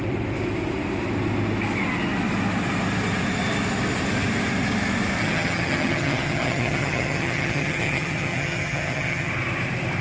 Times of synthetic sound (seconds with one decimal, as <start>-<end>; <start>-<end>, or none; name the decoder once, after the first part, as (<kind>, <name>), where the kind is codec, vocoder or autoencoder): 5.2-9.3 (vocoder, HiFi-GAN)